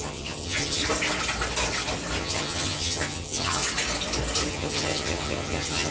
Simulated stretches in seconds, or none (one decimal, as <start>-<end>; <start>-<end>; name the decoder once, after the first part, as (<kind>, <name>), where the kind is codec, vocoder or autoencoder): 0.0-0.8 (vocoder, HiFi-GAN); 2.2-3.6; 4.5-5.9

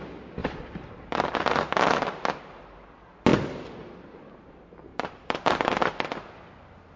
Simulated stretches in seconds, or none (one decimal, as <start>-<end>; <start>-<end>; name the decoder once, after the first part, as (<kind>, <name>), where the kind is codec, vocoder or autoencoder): 0.4-1.5 (vocoder, BigVGAN v2); 4.9-5.9